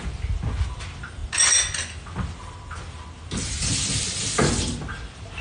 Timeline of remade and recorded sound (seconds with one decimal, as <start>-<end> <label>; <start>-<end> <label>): 0.0-5.4 recorded